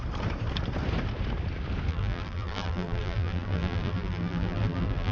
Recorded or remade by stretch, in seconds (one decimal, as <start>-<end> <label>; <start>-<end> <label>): 0.0-1.9 recorded; 1.9-5.1 remade